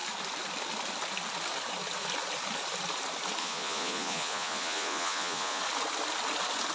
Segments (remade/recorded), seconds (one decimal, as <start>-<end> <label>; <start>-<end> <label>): 0.0-3.4 recorded; 3.4-5.6 remade; 5.6-6.7 recorded